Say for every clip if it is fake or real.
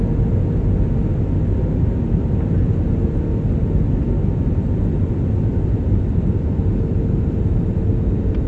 real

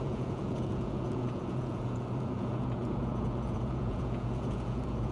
fake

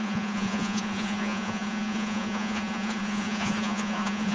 fake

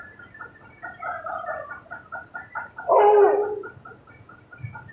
real